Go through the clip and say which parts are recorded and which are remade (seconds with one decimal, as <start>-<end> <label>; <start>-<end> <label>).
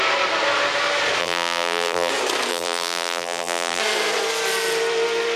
0.0-1.2 recorded; 1.2-2.1 remade; 2.1-2.5 recorded; 2.5-3.8 remade; 3.8-5.4 recorded